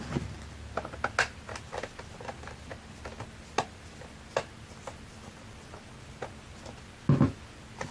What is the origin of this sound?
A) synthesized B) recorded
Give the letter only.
B